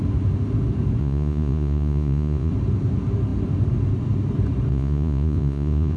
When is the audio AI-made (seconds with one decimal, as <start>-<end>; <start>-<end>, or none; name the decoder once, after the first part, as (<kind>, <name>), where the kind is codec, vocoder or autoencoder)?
1.0-2.5 (vocoder, Vocos); 4.7-6.0